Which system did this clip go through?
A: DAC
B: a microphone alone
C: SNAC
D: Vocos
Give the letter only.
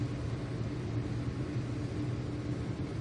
B